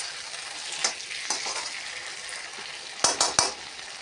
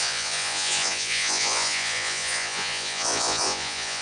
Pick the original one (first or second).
first